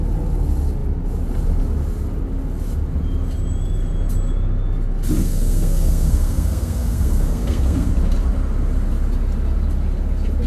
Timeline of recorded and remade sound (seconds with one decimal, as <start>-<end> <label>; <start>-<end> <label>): 0.0-5.2 recorded; 5.2-7.9 remade; 7.9-10.5 recorded

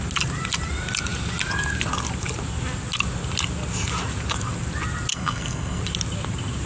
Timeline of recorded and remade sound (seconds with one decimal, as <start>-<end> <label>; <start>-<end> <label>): 0.0-5.1 recorded; 5.1-5.8 remade; 5.8-6.7 recorded

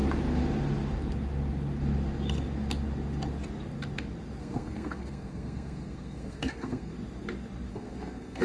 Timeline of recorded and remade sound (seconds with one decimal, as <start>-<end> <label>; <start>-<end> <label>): 0.0-4.4 recorded; 4.4-6.9 remade; 6.9-7.7 recorded; 7.7-8.4 remade

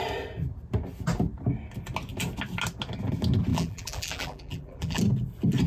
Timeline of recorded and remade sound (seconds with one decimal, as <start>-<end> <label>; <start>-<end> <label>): 0.0-3.5 recorded; 3.5-5.0 remade; 5.0-5.7 recorded